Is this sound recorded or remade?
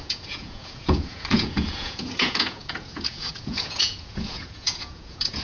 remade